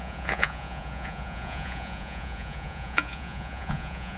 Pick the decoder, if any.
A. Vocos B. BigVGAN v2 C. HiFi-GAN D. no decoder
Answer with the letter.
A